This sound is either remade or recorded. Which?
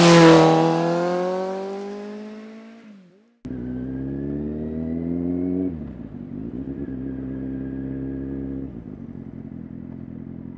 recorded